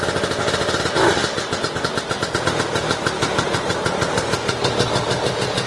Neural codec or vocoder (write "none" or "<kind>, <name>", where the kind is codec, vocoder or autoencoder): none